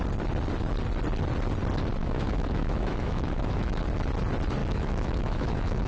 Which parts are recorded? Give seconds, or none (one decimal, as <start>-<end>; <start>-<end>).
0.0-2.0; 3.8-4.6